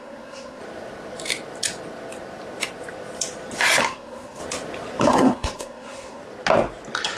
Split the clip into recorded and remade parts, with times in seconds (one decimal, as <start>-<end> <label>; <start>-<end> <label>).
0.0-0.6 remade; 0.6-3.8 recorded; 3.8-4.4 remade; 4.4-5.0 recorded; 5.0-6.2 remade; 6.2-7.2 recorded